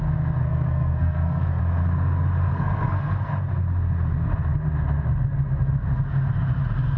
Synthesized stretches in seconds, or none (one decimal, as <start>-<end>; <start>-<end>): 0.4-1.6; 2.5-3.5